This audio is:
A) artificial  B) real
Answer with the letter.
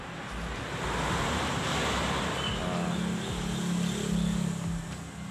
B